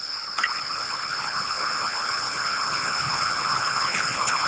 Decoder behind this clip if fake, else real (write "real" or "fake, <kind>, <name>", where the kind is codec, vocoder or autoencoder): fake, codec, HILCodec